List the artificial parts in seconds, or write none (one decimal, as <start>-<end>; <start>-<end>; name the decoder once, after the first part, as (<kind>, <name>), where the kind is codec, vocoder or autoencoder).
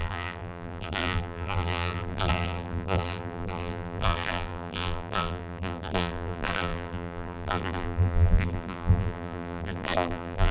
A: 0.0-10.5 (vocoder, BigVGAN v2)